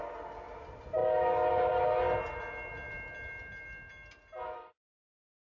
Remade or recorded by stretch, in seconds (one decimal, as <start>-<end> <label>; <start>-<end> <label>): 0.0-5.5 recorded